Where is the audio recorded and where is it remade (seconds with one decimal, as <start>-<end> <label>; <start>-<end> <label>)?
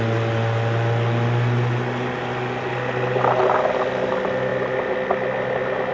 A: 0.0-5.9 recorded